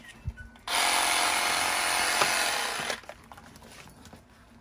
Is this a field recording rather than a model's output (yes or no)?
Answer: yes